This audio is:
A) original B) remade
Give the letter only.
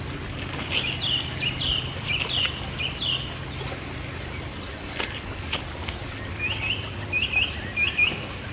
A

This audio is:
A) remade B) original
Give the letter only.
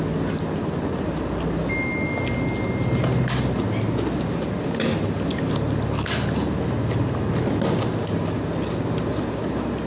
B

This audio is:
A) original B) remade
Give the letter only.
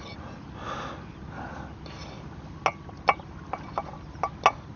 A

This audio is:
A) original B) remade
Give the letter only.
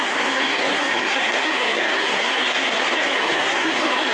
B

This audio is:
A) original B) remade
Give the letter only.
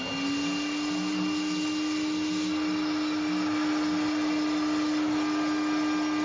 A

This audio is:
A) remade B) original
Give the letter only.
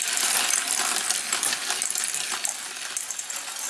B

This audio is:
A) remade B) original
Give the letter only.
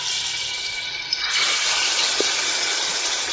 B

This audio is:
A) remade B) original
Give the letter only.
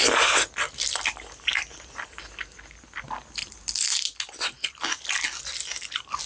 B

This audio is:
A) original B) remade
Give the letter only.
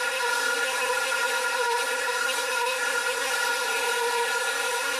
B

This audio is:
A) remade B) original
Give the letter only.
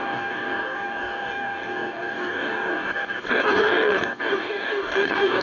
A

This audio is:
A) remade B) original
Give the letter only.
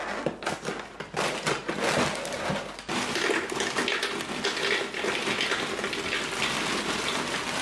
B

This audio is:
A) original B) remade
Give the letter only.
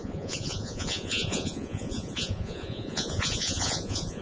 B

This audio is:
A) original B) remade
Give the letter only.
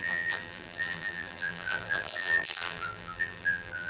B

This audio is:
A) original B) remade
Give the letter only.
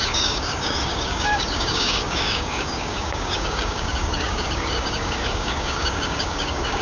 B